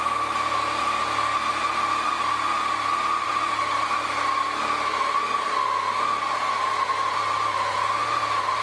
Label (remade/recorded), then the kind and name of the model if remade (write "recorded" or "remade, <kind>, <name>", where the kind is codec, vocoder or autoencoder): recorded